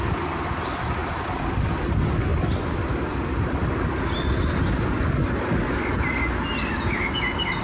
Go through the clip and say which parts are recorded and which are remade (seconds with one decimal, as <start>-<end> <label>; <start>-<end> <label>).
0.0-1.0 recorded; 1.0-1.7 remade; 1.7-2.3 recorded; 2.3-3.8 remade; 3.8-7.6 recorded